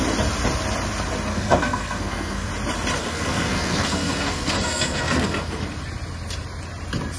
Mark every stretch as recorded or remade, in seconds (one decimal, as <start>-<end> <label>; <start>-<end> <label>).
0.0-1.3 recorded; 1.3-2.5 remade; 2.5-3.0 recorded; 3.0-5.6 remade; 5.6-7.2 recorded